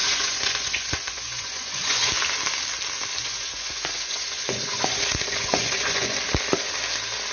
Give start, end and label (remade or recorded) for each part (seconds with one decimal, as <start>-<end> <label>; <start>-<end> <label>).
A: 0.0-2.1 remade; 2.1-3.2 recorded; 3.2-6.2 remade; 6.2-7.3 recorded